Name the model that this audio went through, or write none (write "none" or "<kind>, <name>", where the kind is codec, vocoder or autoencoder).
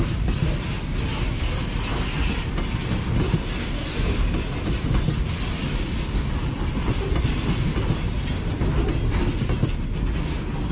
none